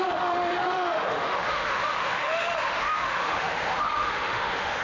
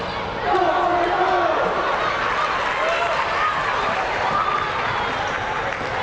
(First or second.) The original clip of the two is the second